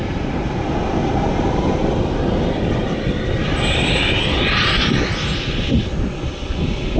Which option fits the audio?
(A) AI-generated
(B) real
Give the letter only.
B